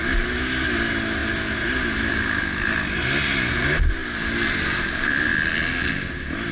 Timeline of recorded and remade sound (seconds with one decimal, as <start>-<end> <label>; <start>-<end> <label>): 0.0-6.5 recorded